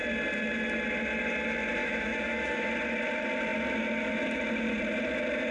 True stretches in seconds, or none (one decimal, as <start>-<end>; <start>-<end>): 0.0-1.8; 2.6-5.5